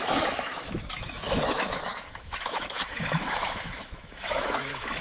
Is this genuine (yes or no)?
no